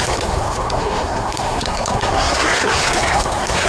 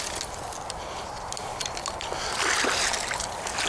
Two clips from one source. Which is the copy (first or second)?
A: first